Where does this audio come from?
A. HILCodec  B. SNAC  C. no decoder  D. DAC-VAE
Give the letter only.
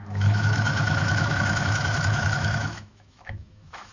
D